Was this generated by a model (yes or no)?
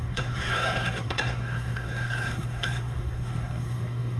yes